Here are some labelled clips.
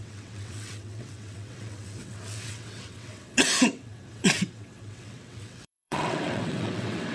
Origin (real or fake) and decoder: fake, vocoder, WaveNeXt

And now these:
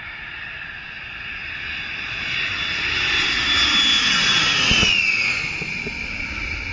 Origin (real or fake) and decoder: real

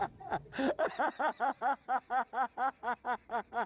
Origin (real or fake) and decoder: fake, vocoder, WaveNeXt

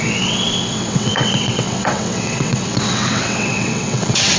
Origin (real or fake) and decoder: fake, vocoder, WaveNeXt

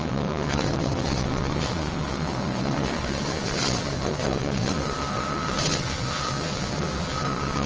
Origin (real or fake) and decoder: fake, vocoder, WaveNeXt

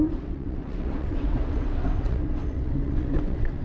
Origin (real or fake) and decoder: fake, vocoder, WaveNeXt